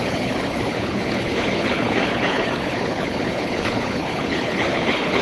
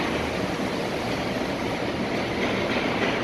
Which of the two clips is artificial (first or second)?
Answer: first